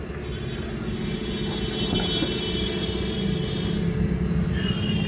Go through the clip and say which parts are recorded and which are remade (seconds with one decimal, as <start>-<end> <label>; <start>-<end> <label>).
0.0-5.1 recorded